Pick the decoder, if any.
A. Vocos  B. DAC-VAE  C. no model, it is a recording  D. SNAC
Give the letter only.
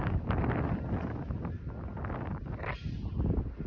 C